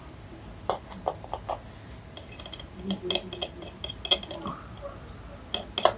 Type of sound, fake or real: real